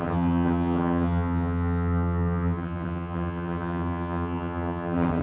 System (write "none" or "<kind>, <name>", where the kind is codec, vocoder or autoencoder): vocoder, HiFi-GAN